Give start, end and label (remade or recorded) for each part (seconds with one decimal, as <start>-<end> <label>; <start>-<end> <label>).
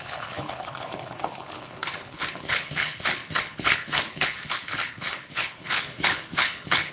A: 0.0-6.9 remade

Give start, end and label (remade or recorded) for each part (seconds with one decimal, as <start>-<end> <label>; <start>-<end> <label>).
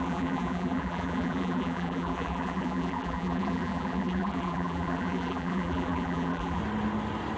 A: 0.0-6.6 remade; 6.6-7.4 recorded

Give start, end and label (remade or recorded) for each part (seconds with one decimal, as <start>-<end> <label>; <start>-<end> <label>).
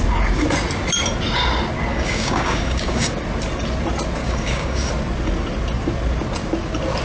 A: 0.0-1.9 recorded; 1.9-3.1 remade; 3.1-4.2 recorded; 4.2-4.9 remade; 4.9-7.0 recorded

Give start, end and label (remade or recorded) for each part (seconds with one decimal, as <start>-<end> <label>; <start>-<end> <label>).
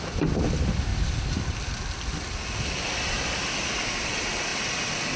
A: 0.0-5.2 recorded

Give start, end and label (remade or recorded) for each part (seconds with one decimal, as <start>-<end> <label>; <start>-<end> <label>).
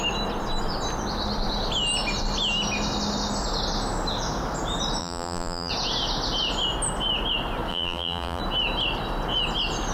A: 0.0-5.0 recorded; 5.0-5.7 remade; 5.7-7.7 recorded; 7.7-8.4 remade; 8.4-9.9 recorded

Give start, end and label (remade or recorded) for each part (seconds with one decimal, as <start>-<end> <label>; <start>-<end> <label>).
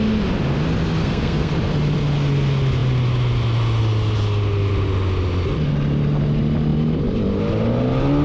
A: 0.0-1.0 recorded; 1.0-1.5 remade; 1.5-8.2 recorded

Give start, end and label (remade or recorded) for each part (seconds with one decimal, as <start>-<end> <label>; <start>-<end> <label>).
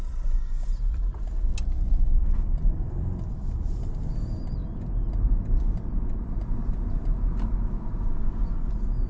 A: 0.0-1.5 remade; 1.5-2.9 recorded; 2.9-4.6 remade; 4.6-8.2 recorded; 8.2-9.1 remade